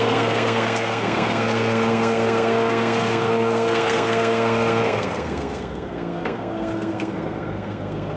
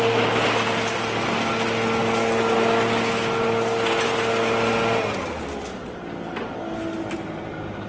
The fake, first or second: first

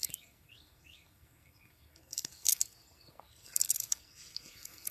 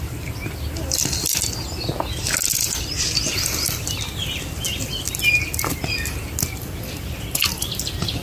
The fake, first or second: first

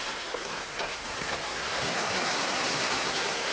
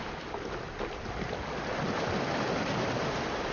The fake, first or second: first